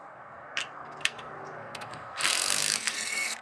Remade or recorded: remade